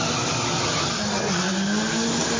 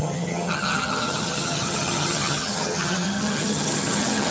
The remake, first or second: second